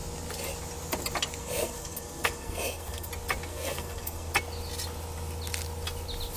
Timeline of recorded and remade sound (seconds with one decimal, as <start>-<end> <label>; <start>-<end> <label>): 0.0-1.4 recorded; 1.4-3.1 remade; 3.1-3.5 recorded; 3.5-4.3 remade; 4.3-6.4 recorded